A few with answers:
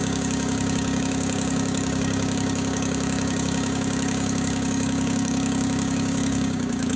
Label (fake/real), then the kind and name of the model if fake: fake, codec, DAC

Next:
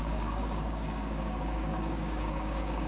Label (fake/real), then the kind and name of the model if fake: fake, codec, DAC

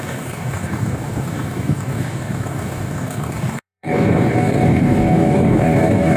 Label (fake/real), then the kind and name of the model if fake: fake, codec, DAC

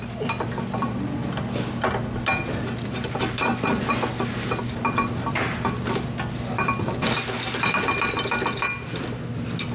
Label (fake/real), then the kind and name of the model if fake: real